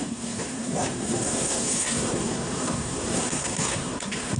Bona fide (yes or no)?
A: no